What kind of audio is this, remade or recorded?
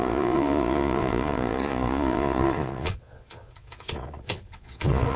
remade